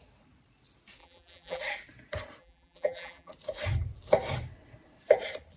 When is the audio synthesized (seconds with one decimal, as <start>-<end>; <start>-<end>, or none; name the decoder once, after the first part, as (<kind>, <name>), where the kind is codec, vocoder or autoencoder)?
1.0-1.6 (vocoder, BigVGAN v2); 2.4-3.3

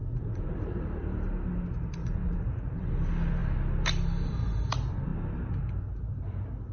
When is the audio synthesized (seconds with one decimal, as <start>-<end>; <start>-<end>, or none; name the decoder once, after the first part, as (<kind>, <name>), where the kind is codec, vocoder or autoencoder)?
0.0-0.8 (vocoder, Vocos); 2.0-2.5

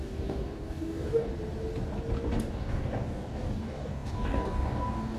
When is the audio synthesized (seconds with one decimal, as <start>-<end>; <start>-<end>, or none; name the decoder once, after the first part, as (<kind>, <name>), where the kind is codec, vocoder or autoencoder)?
0.0-1.3 (codec, DAC); 2.5-5.2

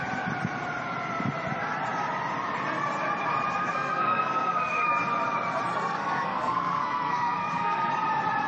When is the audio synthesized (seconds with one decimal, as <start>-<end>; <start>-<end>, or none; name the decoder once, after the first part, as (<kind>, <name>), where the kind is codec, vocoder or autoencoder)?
3.6-4.9 (codec, SNAC); 5.7-7.9

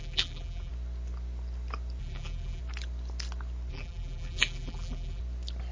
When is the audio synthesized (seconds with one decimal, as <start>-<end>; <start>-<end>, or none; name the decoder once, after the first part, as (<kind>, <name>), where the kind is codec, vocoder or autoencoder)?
0.0-0.7 (vocoder, BigVGAN v2); 2.0-2.6; 3.7-5.2

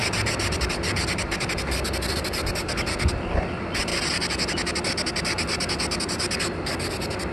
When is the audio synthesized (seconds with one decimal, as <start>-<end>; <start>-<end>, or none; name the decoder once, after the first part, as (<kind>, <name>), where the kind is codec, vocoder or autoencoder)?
none

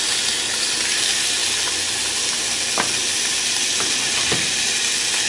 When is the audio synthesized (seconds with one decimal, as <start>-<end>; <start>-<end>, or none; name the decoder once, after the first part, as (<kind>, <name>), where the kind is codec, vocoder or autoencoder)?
none